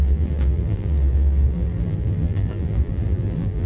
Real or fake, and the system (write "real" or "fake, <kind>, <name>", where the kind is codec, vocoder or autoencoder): fake, vocoder, BigVGAN v2